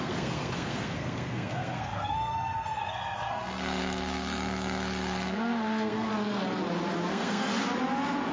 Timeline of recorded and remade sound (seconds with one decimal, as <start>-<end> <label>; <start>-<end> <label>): 0.0-6.1 remade; 6.1-7.1 recorded; 7.1-7.5 remade; 7.5-8.3 recorded

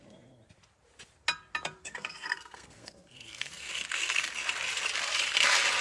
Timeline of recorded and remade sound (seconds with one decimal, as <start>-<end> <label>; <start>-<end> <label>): 0.0-1.8 recorded; 1.8-3.7 remade; 3.7-5.8 recorded